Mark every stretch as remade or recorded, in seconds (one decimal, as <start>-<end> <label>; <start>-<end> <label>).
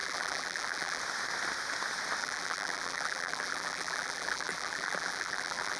0.0-1.0 remade; 1.0-2.2 recorded; 2.2-5.8 remade